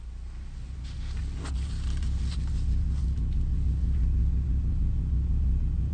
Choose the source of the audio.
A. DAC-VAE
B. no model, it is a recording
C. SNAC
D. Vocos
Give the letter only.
B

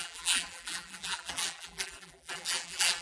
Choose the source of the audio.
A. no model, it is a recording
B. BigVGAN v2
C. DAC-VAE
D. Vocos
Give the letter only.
B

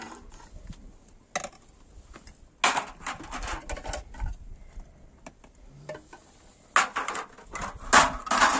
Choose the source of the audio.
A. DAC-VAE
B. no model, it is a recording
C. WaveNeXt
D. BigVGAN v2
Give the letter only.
B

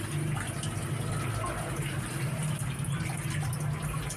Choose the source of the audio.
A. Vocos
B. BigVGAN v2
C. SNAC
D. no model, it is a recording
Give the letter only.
D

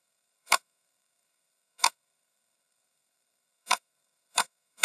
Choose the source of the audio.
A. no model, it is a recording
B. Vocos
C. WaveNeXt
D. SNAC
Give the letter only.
D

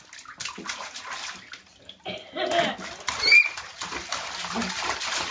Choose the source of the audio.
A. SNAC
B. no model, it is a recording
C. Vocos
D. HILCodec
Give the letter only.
B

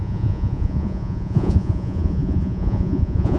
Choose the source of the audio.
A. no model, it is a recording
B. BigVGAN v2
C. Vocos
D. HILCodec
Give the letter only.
C